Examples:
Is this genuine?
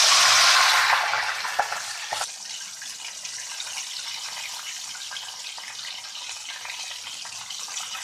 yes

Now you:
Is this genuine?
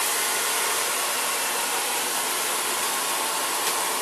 yes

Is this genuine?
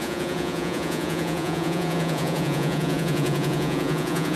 no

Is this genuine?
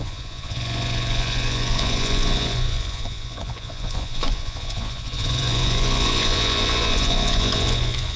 no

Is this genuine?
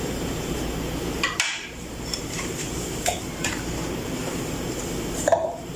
no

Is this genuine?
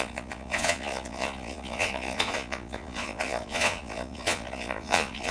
no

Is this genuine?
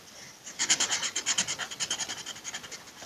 yes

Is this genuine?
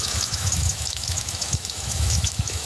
no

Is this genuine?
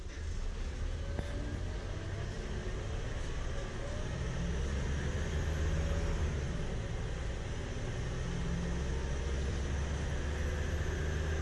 yes